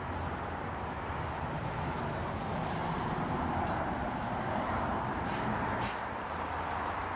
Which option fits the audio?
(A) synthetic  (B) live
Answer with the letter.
A